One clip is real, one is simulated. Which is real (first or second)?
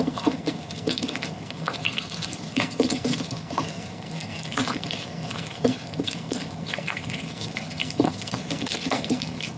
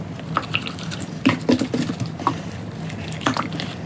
second